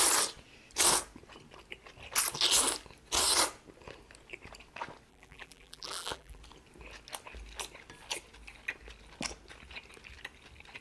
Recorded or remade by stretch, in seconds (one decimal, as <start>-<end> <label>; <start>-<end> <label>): 0.0-5.1 recorded; 5.1-6.4 remade; 6.4-10.8 recorded